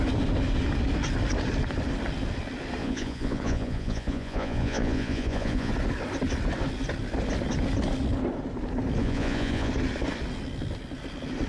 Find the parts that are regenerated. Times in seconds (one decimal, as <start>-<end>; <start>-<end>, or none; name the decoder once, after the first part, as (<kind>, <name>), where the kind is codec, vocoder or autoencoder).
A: 2.8-5.7 (vocoder, Vocos); 9.0-9.7

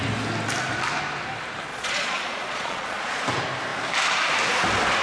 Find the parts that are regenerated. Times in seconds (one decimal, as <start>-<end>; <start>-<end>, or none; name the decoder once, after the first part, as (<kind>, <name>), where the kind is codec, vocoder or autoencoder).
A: 1.7-3.2 (vocoder, Vocos)

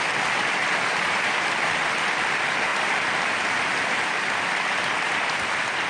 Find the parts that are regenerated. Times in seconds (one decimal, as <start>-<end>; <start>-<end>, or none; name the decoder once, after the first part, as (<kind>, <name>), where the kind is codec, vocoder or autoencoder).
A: none

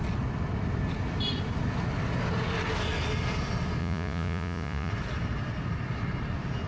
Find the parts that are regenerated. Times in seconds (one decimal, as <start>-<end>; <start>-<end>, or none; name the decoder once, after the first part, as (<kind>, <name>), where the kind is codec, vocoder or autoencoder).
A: 3.8-4.9 (vocoder, Vocos)